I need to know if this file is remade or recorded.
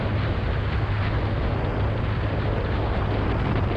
recorded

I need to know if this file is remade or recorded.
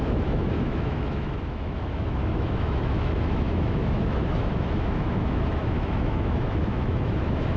remade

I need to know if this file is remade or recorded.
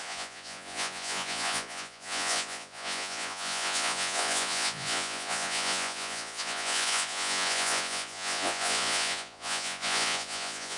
remade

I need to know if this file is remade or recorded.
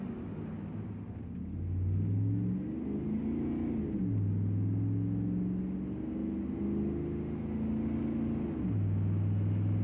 recorded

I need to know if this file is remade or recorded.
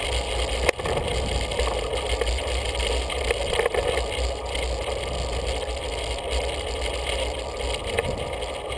recorded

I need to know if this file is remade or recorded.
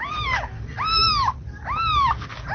recorded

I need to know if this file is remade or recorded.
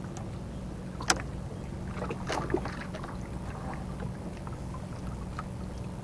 recorded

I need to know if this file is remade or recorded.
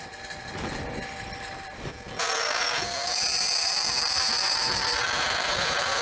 remade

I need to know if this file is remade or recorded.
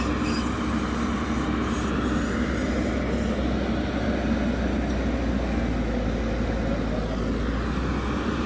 recorded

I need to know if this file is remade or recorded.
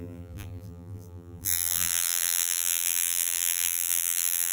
remade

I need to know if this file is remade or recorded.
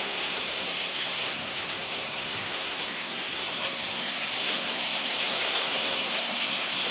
remade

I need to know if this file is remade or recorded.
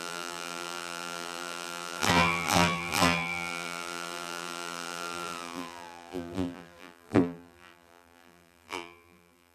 remade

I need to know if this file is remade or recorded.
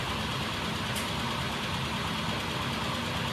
recorded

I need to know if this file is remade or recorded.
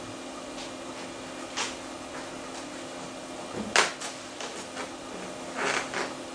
recorded